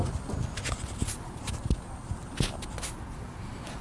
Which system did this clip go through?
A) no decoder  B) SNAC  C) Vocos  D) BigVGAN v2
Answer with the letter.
A